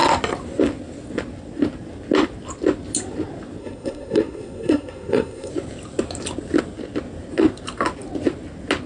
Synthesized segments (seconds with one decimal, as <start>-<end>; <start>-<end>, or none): 3.6-5.5